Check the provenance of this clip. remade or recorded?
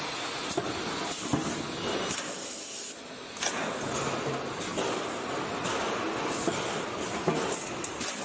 recorded